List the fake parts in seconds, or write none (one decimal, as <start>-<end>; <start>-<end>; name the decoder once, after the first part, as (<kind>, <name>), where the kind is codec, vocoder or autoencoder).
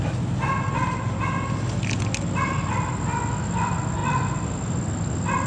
none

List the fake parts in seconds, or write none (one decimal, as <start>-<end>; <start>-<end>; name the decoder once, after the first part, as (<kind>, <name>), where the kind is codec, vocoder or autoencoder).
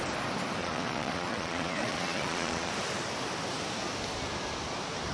0.6-2.7 (vocoder, Vocos)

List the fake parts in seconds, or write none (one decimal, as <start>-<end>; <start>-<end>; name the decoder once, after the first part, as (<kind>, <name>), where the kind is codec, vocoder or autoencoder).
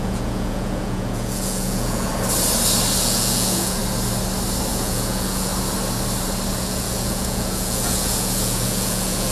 0.0-2.1 (vocoder, Vocos); 3.0-3.8; 4.7-5.5; 6.6-9.3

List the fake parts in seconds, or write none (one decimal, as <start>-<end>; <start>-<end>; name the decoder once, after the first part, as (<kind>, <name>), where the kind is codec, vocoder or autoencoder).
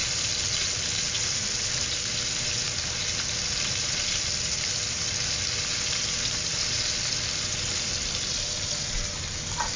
none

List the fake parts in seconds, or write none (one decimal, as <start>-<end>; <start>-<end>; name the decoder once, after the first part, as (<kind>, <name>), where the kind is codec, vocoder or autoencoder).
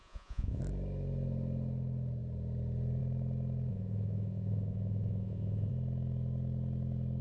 0.0-0.6 (vocoder, Vocos); 3.7-5.7